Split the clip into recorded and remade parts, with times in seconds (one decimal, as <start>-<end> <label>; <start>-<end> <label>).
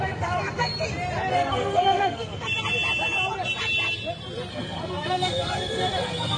0.0-0.7 remade; 0.7-1.3 recorded; 1.3-2.3 remade; 2.3-4.5 recorded; 4.5-6.4 remade